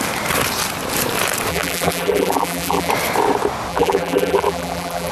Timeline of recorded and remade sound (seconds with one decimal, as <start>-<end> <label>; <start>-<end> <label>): 0.0-1.5 recorded; 1.5-2.9 remade; 2.9-3.7 recorded; 3.7-5.1 remade